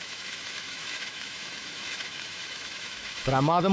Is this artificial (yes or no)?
yes